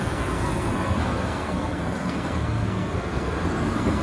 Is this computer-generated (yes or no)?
yes